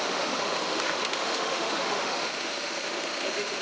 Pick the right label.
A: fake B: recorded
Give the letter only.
A